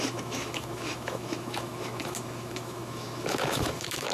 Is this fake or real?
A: fake